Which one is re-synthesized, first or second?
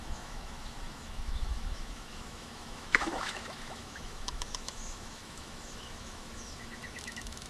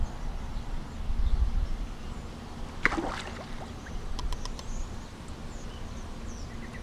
first